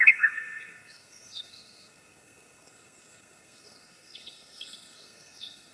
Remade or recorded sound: remade